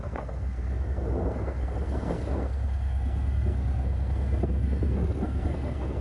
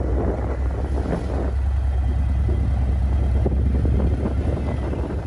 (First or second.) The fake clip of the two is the first